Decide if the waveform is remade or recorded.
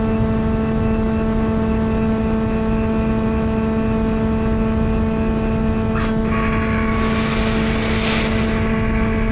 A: recorded